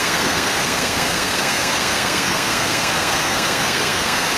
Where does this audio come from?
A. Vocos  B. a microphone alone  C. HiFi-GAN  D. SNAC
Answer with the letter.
D